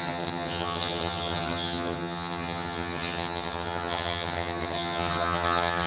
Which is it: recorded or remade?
remade